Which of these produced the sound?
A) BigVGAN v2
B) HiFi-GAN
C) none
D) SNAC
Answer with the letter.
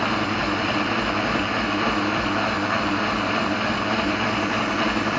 C